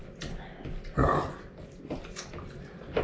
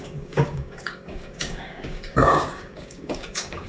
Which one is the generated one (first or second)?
second